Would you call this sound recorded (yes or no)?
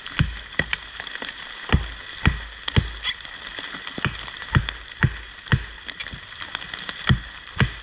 yes